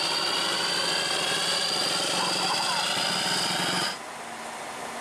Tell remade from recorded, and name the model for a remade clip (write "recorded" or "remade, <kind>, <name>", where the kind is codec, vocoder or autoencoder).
recorded